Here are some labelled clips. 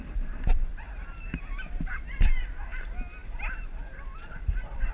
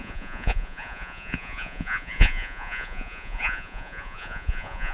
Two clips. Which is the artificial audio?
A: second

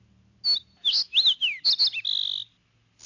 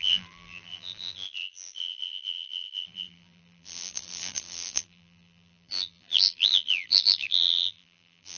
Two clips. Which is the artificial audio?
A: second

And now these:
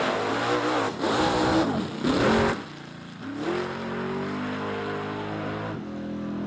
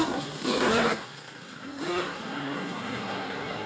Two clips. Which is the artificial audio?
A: second